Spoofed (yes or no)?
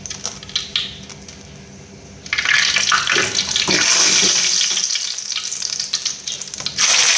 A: no